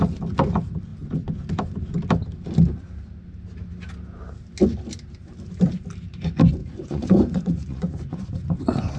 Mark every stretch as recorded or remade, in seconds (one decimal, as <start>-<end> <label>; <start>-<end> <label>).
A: 0.0-6.6 recorded; 6.6-8.6 remade; 8.6-9.0 recorded

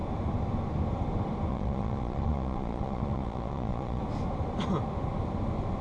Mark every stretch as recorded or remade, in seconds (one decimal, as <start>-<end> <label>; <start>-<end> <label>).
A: 0.0-1.5 recorded; 1.5-4.0 remade; 4.0-5.8 recorded

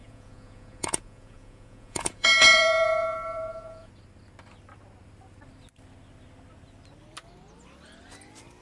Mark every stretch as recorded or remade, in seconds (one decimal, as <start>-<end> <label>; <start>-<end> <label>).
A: 0.0-3.9 remade; 3.9-8.6 recorded

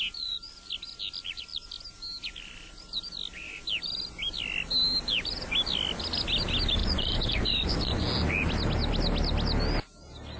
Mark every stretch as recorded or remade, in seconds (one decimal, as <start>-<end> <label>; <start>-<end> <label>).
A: 0.0-6.8 recorded; 6.8-8.0 remade; 8.0-10.4 recorded

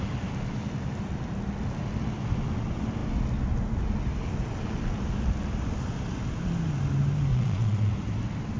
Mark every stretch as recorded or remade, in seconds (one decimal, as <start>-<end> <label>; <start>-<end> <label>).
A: 0.0-7.3 recorded; 7.3-7.9 remade; 7.9-8.6 recorded